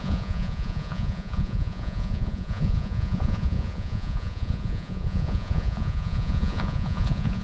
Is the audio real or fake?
fake